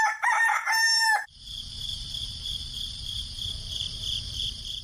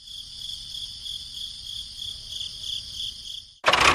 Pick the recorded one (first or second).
second